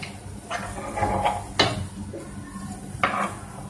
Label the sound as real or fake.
real